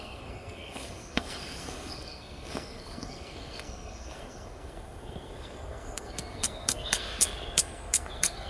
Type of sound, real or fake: fake